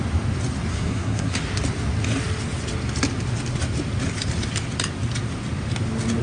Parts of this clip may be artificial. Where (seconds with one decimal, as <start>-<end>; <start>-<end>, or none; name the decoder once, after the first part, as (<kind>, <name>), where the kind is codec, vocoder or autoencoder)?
0.7-1.4 (codec, SNAC)